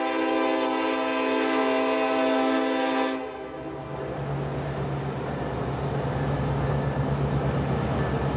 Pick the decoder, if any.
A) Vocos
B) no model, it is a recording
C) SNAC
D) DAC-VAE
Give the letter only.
B